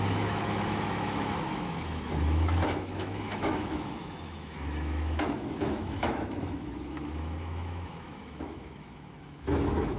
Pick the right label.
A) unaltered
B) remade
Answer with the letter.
B